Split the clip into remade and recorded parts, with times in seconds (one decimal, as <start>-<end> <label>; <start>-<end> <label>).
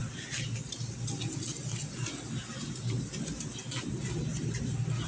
0.0-5.1 recorded